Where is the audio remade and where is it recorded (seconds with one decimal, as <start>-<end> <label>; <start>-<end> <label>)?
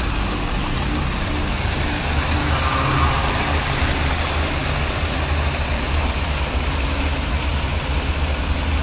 0.0-8.8 recorded